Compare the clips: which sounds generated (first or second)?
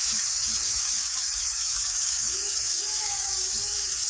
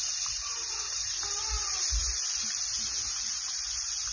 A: first